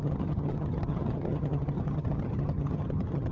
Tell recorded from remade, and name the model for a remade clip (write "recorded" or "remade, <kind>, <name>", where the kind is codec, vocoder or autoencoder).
remade, vocoder, HiFi-GAN